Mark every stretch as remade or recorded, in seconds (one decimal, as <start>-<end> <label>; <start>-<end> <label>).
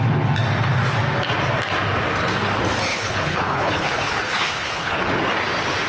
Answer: 0.0-2.9 recorded; 2.9-5.0 remade; 5.0-5.9 recorded